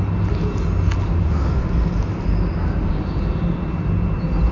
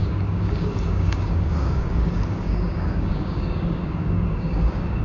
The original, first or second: first